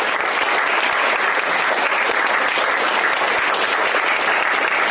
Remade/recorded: recorded